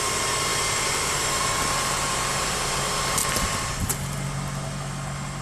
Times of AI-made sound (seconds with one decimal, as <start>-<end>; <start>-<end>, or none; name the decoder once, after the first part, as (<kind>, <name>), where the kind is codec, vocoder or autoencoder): 0.0-3.2 (vocoder, BigVGAN v2)